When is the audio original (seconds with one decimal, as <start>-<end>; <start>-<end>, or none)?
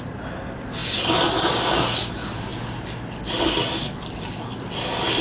0.0-5.2